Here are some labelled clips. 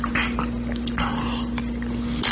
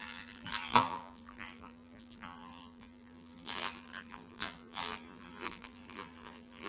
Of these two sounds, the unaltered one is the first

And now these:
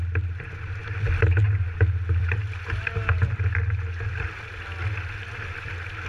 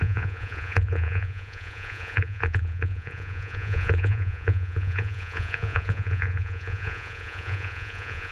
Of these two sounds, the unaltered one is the first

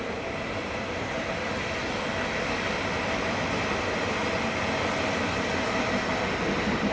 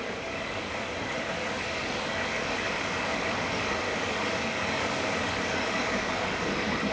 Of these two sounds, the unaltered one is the first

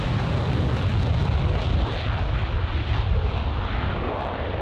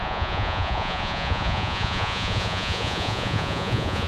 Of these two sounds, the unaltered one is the first